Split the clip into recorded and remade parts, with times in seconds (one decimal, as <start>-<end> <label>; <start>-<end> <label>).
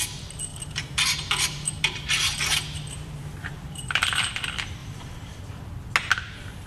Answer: 0.0-0.5 recorded; 0.5-4.3 remade; 4.3-4.8 recorded; 4.8-5.5 remade; 5.5-6.7 recorded